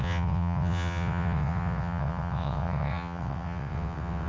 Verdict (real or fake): fake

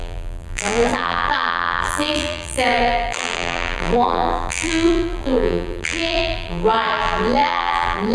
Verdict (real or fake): fake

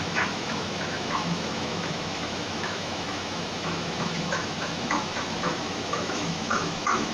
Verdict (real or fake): fake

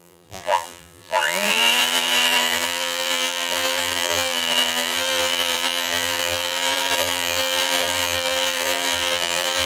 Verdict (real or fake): fake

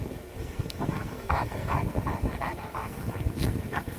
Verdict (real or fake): fake